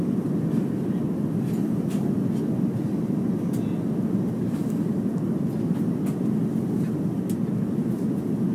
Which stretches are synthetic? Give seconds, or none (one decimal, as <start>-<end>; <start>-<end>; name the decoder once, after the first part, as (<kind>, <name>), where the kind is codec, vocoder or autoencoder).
4.6-6.4 (vocoder, BigVGAN v2)